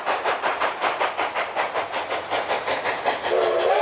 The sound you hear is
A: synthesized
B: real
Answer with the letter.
A